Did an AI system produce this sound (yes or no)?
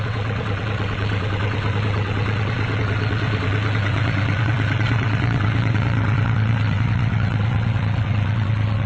yes